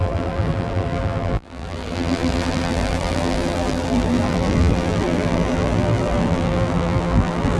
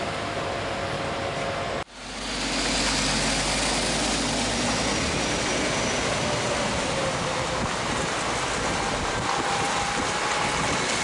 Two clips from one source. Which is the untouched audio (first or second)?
second